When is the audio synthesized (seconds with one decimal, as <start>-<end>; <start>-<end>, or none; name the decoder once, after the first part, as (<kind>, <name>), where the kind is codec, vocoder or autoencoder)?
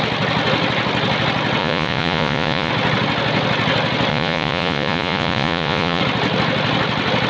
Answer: 1.6-2.7 (vocoder, Vocos); 4.1-6.0